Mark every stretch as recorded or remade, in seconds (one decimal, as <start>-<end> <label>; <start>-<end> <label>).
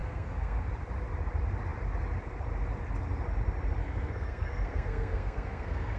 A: 0.0-0.7 remade; 0.7-3.8 recorded; 3.8-6.0 remade